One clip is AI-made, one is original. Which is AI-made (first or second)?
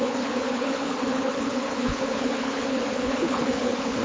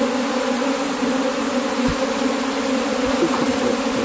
first